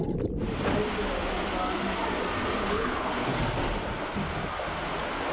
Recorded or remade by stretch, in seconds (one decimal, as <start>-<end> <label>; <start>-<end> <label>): 0.0-2.6 recorded; 2.6-3.4 remade; 3.4-5.3 recorded